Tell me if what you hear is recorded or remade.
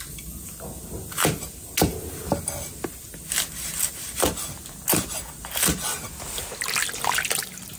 recorded